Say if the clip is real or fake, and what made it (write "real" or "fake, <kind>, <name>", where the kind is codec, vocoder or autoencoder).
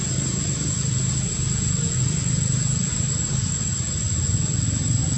real